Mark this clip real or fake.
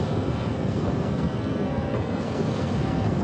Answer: fake